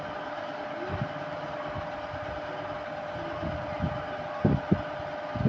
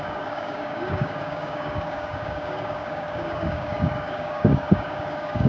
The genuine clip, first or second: first